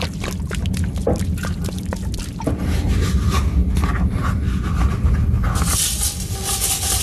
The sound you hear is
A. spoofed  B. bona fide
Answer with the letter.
B